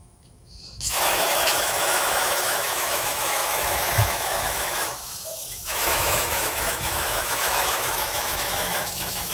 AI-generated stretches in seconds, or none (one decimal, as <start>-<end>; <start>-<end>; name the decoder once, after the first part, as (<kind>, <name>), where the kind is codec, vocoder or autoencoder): 0.0-9.3 (autoencoder, DAC-VAE)